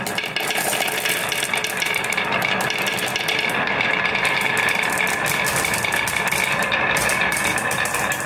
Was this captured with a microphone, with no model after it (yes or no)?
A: yes